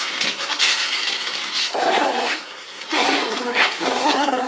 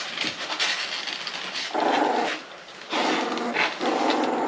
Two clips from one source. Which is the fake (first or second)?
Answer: first